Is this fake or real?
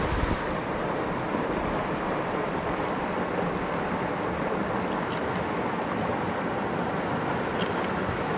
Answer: real